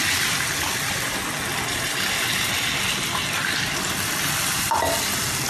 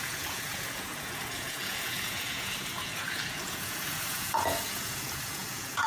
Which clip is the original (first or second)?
first